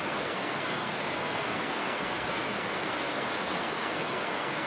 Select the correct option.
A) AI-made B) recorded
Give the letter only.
A